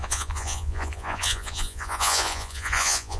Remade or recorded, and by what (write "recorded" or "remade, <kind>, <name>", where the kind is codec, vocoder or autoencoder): remade, vocoder, Vocos